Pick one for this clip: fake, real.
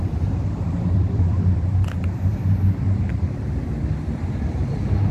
fake